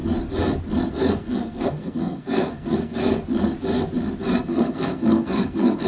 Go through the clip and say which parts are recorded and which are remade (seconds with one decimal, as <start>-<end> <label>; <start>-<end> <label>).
0.0-0.9 recorded; 0.9-3.2 remade; 3.2-4.3 recorded; 4.3-5.9 remade